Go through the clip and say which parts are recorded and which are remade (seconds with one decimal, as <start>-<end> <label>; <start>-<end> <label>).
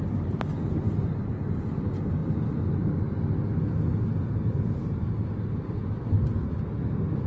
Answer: 0.0-7.3 recorded